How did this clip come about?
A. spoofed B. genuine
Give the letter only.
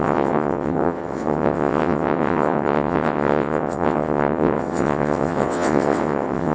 A